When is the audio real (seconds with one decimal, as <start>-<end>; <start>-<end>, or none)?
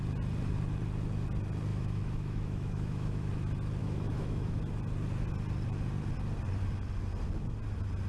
0.0-1.7; 3.3-3.8; 4.6-8.1